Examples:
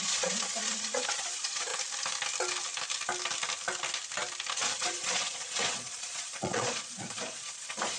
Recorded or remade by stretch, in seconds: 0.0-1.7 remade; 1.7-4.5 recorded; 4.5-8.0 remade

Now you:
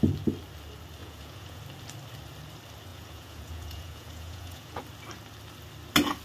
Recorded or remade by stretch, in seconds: 0.0-1.0 recorded; 1.0-1.6 remade; 1.6-2.9 recorded; 2.9-4.8 remade; 4.8-6.2 recorded

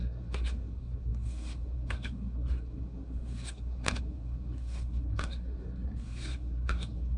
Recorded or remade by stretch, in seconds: 0.0-7.2 remade

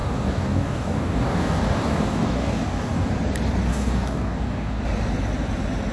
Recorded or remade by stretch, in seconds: 0.0-3.1 remade; 3.1-3.7 recorded; 3.7-4.8 remade; 4.8-5.9 recorded

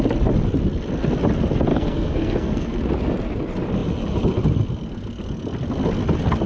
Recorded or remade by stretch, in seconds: 0.0-1.7 recorded; 1.7-2.8 remade; 2.8-6.5 recorded

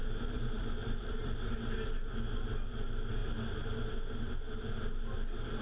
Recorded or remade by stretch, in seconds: 0.0-1.5 remade; 1.5-5.6 recorded